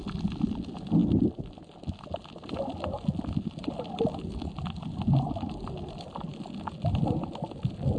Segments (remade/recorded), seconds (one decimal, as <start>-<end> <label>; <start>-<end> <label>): 0.0-8.0 recorded